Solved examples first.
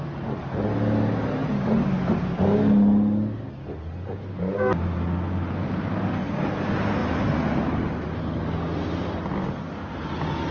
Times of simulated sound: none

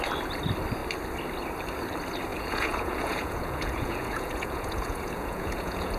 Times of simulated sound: 2.3-6.0 (vocoder, Vocos)

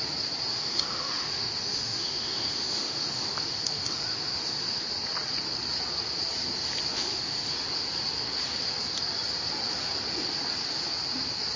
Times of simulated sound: 0.5-4.9 (autoencoder, DAC-VAE); 6.9-7.4

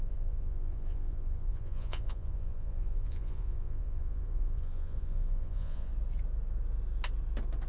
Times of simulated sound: 0.0-5.9 (vocoder, Vocos)

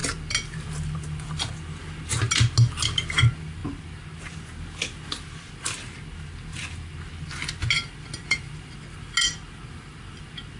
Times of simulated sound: none

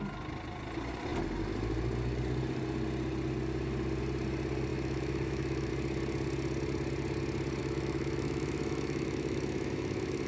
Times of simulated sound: 4.7-5.7 (autoencoder, DAC-VAE); 7.6-10.3